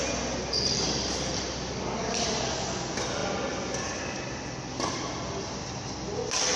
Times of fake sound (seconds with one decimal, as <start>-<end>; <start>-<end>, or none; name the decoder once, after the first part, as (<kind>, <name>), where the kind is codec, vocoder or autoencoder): none